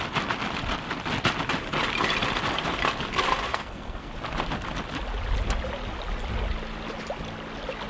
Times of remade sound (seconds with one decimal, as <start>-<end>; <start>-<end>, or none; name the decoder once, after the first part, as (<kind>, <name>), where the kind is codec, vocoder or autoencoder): 3.5-4.1 (codec, SNAC)